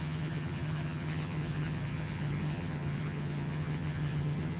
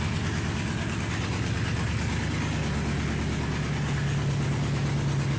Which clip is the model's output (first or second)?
first